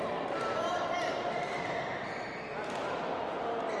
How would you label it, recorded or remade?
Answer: recorded